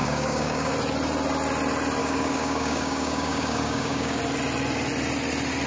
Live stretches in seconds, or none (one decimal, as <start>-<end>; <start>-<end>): 0.7-2.0; 4.2-5.7